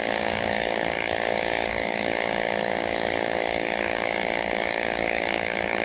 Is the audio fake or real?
fake